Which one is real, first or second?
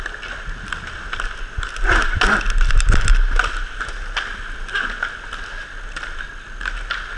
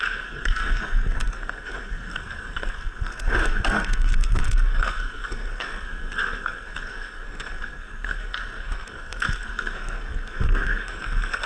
first